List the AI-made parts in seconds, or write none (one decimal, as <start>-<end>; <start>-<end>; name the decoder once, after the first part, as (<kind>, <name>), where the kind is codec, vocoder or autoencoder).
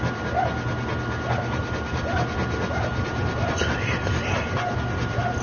none